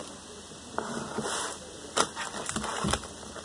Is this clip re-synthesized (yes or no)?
no